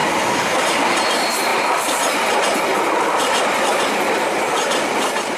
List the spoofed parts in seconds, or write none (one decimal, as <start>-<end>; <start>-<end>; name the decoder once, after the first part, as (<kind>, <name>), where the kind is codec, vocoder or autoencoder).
none